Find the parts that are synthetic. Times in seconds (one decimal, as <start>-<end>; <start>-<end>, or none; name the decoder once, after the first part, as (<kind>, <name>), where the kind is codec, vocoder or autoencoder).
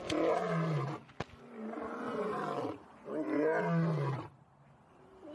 none